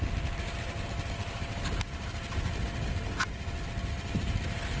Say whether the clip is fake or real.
real